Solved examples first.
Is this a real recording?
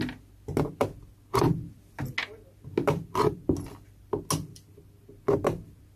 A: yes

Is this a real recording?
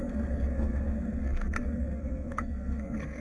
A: no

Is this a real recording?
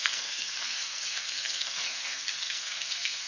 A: no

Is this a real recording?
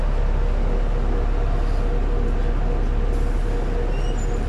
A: yes